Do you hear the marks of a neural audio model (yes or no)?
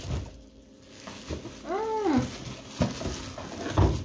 no